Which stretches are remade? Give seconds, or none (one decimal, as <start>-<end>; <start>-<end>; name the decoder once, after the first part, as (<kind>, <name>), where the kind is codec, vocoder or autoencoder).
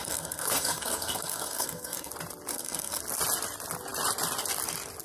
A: 0.0-2.1 (codec, SNAC); 2.5-3.0